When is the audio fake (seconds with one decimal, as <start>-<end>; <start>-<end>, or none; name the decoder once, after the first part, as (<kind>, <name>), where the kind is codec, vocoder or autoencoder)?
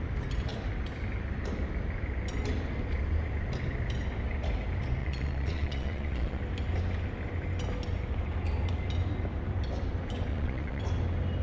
5.0-6.4 (vocoder, Vocos); 10.3-10.8